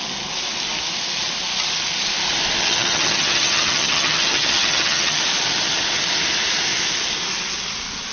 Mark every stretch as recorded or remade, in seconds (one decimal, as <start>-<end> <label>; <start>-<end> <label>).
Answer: 0.0-2.6 recorded; 2.6-5.2 remade; 5.2-8.1 recorded